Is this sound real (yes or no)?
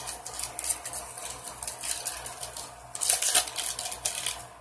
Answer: yes